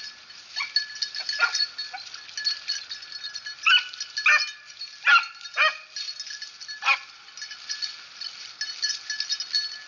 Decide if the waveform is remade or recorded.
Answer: recorded